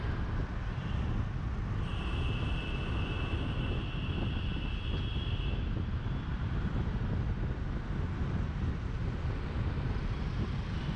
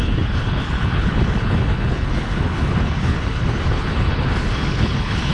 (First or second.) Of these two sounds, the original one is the first